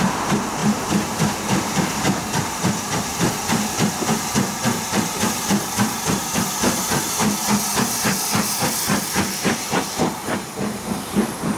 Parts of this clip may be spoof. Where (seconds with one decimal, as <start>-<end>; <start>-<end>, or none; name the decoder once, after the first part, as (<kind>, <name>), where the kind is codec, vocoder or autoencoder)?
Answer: 0.0-7.2 (vocoder, BigVGAN v2); 9.1-11.6